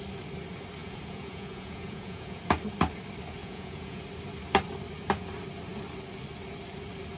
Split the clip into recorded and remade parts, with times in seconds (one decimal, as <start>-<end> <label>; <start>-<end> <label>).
0.0-0.8 recorded; 0.8-2.4 remade; 2.4-3.4 recorded; 3.4-4.0 remade; 4.0-7.2 recorded